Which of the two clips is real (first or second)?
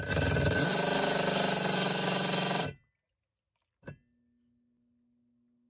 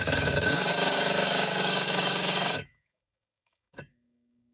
first